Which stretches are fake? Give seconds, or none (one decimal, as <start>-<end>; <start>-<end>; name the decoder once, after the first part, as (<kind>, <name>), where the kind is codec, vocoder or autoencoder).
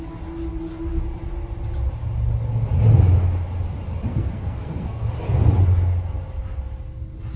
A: 4.1-5.0 (codec, SNAC)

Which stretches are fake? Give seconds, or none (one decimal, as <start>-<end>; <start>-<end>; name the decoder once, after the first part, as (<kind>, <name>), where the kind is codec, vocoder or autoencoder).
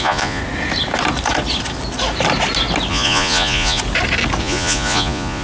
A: 0.0-0.4 (vocoder, Vocos); 2.9-3.8; 4.4-5.4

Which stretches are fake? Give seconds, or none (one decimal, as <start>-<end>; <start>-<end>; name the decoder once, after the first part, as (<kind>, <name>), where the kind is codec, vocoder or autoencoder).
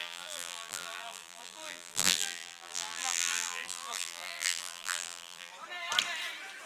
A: 0.0-5.5 (vocoder, BigVGAN v2)